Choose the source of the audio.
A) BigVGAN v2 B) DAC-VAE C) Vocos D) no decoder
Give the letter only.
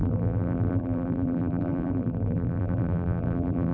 A